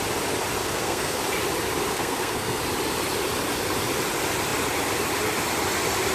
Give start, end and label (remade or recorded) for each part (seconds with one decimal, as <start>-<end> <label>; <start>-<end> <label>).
0.0-0.6 recorded; 0.6-1.2 remade; 1.2-1.9 recorded; 1.9-2.6 remade; 2.6-6.1 recorded